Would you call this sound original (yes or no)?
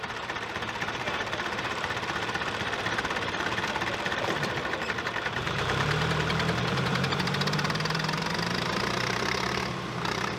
no